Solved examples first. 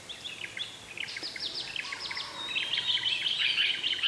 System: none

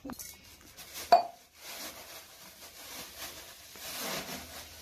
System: none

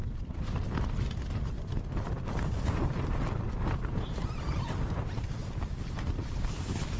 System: none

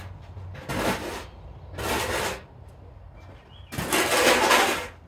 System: none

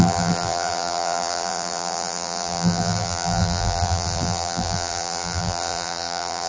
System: vocoder, BigVGAN v2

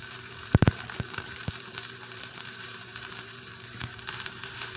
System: vocoder, BigVGAN v2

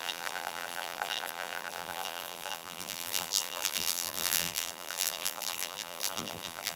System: vocoder, BigVGAN v2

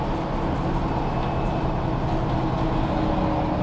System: none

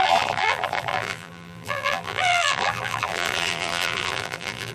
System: vocoder, BigVGAN v2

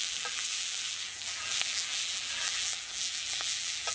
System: vocoder, BigVGAN v2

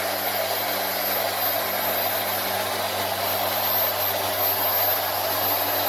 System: none